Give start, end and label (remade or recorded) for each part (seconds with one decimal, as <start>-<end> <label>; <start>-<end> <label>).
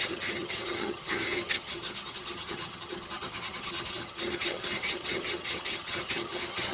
0.0-6.7 remade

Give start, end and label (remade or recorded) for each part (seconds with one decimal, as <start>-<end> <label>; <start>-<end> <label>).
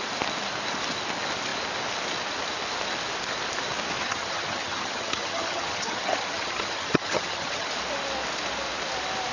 0.0-4.0 recorded; 4.0-7.7 remade; 7.7-9.3 recorded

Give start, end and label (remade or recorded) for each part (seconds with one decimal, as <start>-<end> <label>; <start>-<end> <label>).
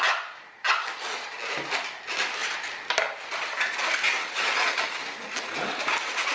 0.0-4.2 recorded; 4.2-5.0 remade; 5.0-6.3 recorded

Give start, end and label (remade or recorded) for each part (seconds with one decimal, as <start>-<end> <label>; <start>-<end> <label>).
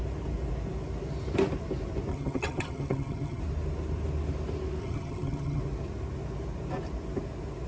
0.0-2.1 recorded; 2.1-3.4 remade; 3.4-4.8 recorded; 4.8-5.6 remade; 5.6-7.7 recorded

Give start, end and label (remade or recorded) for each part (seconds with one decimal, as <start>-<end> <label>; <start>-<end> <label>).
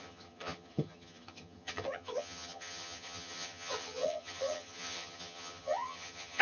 0.0-6.4 remade